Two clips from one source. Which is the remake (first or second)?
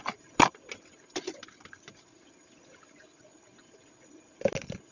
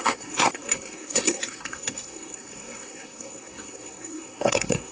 second